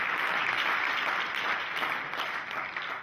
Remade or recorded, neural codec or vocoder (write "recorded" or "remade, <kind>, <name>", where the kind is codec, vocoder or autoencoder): remade, vocoder, BigVGAN v2